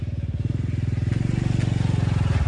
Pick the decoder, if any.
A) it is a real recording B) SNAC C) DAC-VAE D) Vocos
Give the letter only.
A